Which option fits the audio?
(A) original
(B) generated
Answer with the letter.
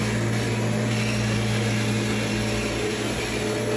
A